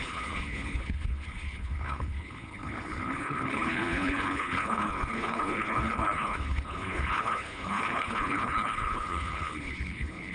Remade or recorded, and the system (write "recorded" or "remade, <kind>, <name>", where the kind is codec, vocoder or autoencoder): remade, codec, HILCodec